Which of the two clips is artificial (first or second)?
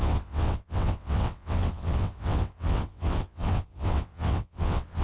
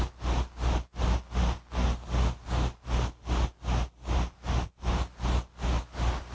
first